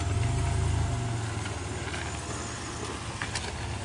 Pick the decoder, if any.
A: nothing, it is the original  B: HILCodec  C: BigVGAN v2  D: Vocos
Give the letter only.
A